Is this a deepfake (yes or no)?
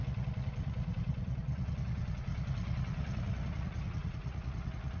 yes